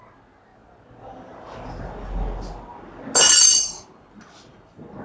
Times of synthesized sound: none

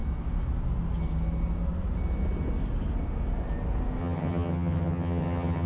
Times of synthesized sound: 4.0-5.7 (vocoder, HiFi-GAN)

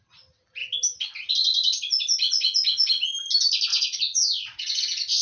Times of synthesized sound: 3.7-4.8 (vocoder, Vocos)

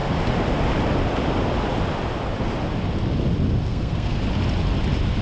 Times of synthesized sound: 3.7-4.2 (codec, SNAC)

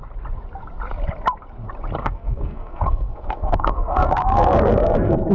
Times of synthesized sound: 2.0-5.3 (codec, SNAC)

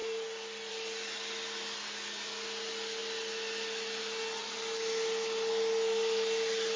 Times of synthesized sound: none